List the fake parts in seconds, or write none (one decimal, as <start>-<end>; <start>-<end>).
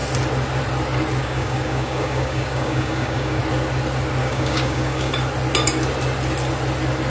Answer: 1.2-3.4; 4.2-5.1